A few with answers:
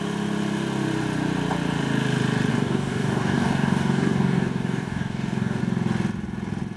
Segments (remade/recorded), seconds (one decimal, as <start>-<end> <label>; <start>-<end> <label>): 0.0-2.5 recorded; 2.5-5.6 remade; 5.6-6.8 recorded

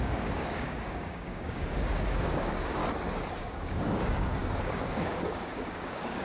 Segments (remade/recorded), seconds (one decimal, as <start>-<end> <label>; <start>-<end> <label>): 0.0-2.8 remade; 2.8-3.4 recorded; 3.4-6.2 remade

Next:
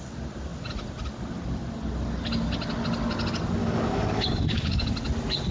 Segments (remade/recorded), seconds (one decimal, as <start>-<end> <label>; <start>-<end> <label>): 0.0-3.6 recorded; 3.6-4.9 remade; 4.9-5.5 recorded